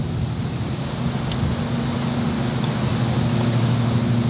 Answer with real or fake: real